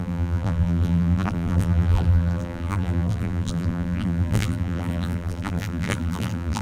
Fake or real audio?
fake